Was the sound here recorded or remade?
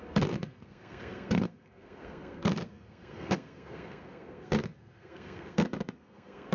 remade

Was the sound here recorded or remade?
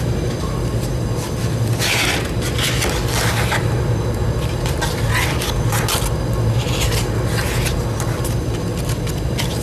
recorded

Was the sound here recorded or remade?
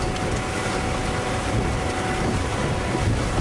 recorded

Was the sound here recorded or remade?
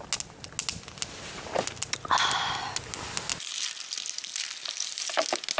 recorded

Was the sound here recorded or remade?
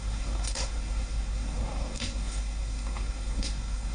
remade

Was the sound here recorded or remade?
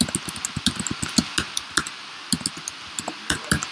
recorded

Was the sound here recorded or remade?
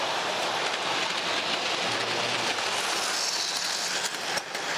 recorded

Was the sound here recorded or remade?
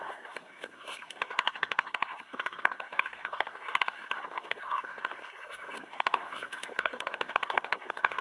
remade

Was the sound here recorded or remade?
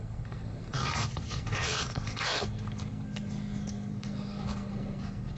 remade